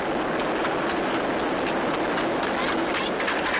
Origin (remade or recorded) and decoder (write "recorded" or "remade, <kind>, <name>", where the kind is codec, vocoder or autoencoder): recorded